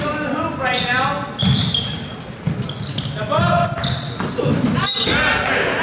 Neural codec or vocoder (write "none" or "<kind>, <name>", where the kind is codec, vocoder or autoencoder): none